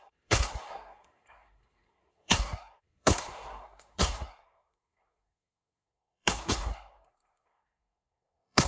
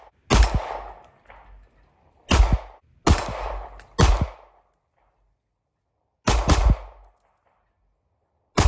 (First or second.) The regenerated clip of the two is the first